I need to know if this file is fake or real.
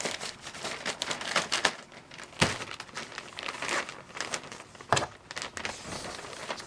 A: real